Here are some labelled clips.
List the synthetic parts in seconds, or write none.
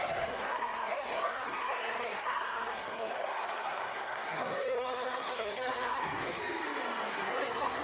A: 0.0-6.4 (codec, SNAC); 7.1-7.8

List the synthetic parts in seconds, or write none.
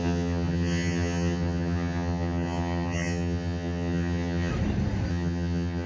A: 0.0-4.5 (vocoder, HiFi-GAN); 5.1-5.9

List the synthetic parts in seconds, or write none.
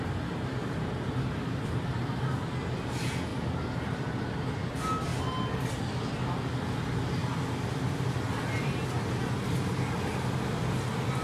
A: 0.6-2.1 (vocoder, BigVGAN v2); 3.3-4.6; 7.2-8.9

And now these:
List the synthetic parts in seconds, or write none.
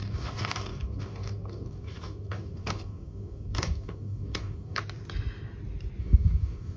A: 0.0-4.8 (codec, DAC); 6.0-6.8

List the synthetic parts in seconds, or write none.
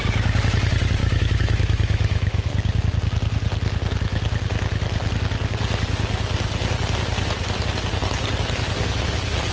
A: 1.0-2.5 (autoencoder, DAC-VAE)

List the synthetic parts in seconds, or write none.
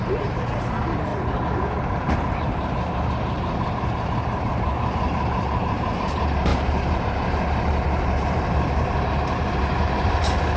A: 0.0-1.1 (vocoder, BigVGAN v2); 1.8-10.6